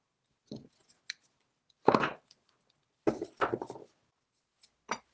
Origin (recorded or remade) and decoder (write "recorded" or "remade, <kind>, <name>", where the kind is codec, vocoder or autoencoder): recorded